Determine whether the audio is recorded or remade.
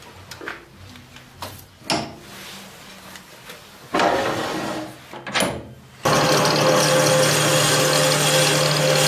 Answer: recorded